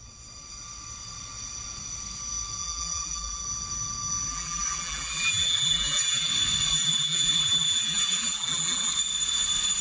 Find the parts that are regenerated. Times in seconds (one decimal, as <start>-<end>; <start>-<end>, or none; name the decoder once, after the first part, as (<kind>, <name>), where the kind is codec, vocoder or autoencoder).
2.6-3.4 (vocoder, BigVGAN v2); 4.3-6.3; 6.7-8.9